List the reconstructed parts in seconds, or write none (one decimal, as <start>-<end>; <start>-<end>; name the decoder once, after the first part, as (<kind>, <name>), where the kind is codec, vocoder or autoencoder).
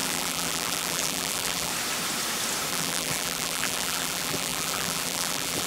0.0-1.7 (vocoder, BigVGAN v2); 2.7-5.7